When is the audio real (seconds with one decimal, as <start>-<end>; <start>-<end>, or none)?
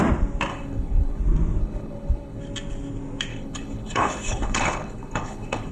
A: 0.0-0.5; 1.2-1.6; 2.4-3.3